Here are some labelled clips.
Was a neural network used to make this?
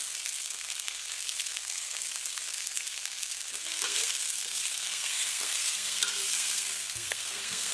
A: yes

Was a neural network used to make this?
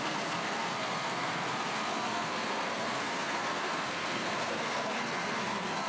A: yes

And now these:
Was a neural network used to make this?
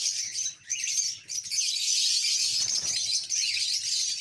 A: no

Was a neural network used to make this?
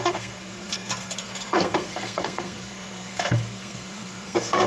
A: yes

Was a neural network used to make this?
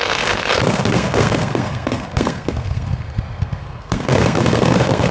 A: yes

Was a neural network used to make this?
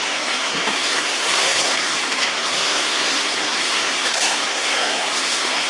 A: yes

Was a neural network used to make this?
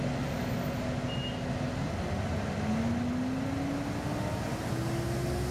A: no